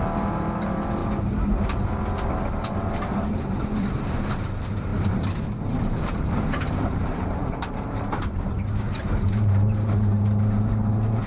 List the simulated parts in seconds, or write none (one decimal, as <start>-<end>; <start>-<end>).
0.0-1.0; 2.5-11.3